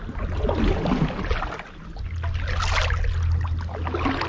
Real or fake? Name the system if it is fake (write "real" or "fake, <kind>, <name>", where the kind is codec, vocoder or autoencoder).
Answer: real